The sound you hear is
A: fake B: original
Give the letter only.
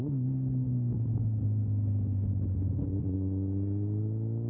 A